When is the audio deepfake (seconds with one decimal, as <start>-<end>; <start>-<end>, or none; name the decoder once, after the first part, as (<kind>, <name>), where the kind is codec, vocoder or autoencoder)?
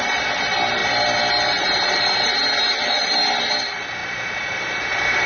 none